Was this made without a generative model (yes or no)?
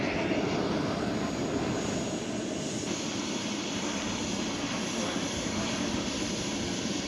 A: yes